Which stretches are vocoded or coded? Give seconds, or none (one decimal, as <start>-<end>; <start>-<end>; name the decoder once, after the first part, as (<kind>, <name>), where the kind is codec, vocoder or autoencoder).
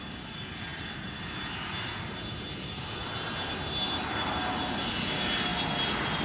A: none